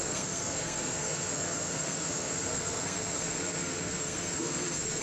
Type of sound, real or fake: fake